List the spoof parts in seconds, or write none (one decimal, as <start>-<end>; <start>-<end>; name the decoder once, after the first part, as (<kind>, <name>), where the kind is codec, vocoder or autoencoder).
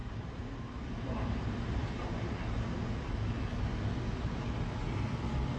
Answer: 0.0-1.9 (vocoder, BigVGAN v2)